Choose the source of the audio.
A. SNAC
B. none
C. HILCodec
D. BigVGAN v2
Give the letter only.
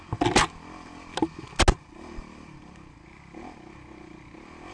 B